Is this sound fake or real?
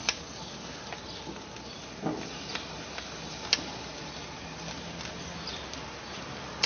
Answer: real